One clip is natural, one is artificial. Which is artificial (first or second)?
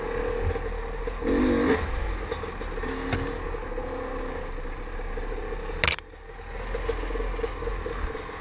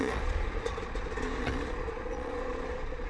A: second